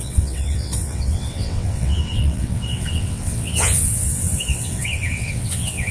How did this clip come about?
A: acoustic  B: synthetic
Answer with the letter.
B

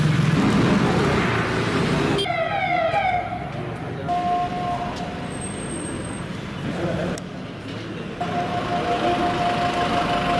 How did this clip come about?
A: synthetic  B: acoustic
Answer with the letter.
B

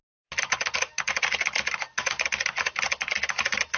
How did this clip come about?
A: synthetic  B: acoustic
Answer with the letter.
B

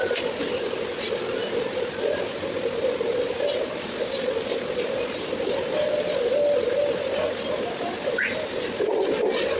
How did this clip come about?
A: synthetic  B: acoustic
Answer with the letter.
B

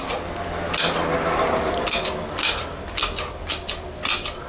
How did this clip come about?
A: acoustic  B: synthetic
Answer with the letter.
A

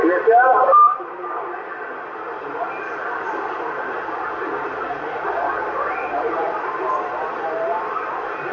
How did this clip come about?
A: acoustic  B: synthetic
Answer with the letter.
A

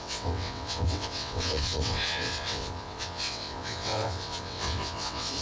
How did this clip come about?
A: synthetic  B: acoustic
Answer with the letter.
A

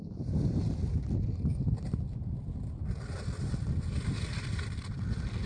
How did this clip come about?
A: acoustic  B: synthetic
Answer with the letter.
A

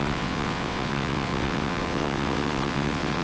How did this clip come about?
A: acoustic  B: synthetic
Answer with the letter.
B